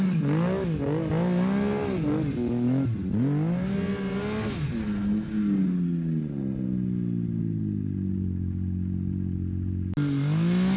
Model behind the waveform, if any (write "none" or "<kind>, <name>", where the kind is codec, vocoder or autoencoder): none